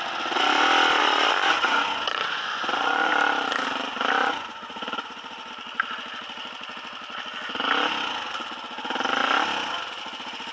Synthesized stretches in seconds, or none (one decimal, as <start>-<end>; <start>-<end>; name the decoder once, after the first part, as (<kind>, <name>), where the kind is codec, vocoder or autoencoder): 1.0-3.1 (vocoder, Vocos); 4.2-5.5